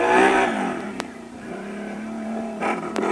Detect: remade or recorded remade